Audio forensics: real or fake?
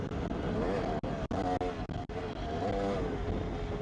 real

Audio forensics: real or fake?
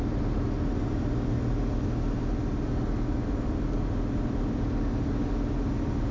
real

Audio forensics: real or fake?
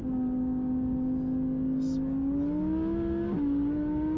real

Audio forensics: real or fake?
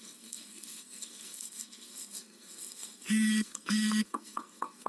fake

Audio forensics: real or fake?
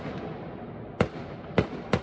real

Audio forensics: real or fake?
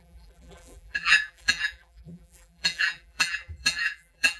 fake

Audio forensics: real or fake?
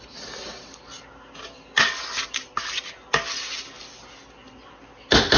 real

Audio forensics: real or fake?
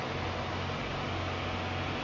real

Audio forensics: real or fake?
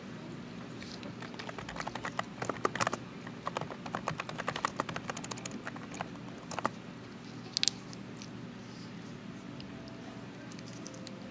real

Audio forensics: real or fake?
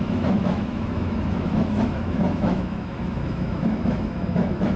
fake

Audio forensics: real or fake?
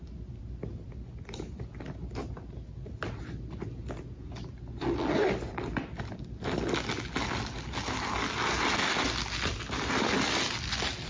real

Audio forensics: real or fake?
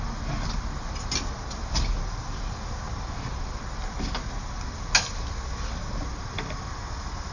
real